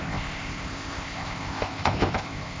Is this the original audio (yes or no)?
no